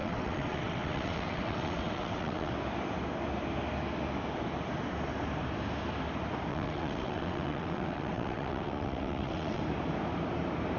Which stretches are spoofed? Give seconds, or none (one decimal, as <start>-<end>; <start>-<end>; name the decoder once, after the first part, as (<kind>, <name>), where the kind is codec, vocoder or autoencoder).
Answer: 0.0-2.5 (vocoder, WaveNeXt); 6.5-9.6